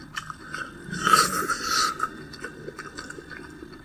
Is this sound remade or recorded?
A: recorded